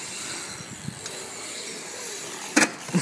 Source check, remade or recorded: recorded